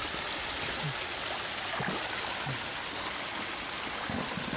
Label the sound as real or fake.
real